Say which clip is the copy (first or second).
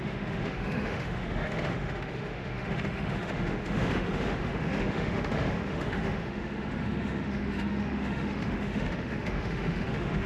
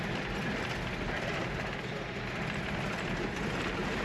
first